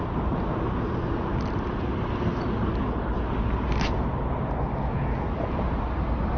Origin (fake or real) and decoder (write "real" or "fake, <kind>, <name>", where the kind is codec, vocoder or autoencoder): real